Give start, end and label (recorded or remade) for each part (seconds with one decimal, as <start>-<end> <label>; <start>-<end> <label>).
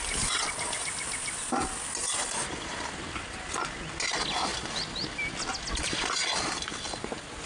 0.0-7.5 recorded